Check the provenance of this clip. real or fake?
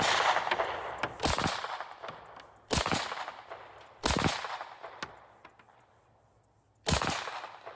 real